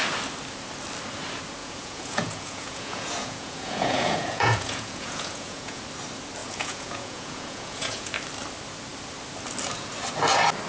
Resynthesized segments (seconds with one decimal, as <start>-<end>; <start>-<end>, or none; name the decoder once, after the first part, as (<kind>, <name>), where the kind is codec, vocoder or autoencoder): 1.6-5.8 (vocoder, Vocos); 6.4-8.1